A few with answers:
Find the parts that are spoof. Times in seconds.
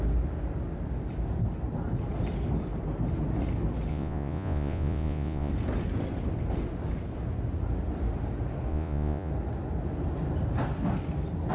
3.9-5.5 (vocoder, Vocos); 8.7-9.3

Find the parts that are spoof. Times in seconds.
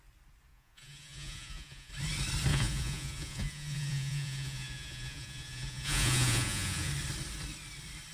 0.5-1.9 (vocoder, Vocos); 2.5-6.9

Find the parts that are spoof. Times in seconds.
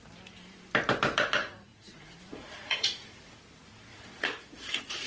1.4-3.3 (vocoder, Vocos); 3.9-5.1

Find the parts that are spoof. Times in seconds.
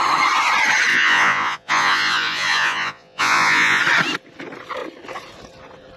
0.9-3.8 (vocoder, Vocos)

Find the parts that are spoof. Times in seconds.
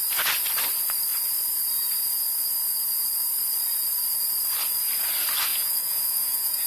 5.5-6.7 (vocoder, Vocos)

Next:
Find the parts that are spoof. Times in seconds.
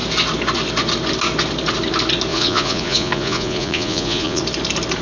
2.3-4.4 (vocoder, Vocos)